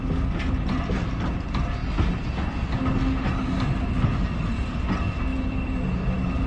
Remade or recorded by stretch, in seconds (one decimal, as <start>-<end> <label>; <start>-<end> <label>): 0.0-6.5 recorded